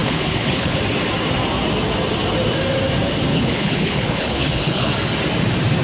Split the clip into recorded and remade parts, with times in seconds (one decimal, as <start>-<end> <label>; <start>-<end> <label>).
0.0-0.8 remade; 0.8-3.3 recorded; 3.3-4.9 remade; 4.9-5.8 recorded